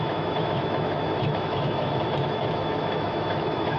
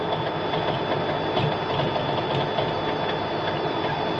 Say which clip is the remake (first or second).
first